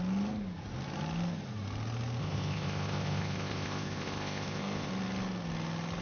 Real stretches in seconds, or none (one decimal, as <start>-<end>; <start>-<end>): 0.0-2.2; 4.9-6.0